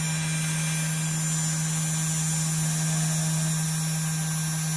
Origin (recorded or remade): recorded